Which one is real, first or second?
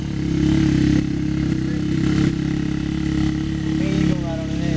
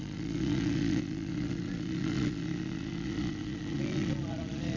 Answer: first